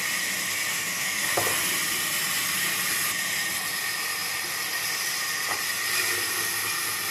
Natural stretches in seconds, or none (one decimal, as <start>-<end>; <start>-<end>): 0.0-0.7; 1.3-7.1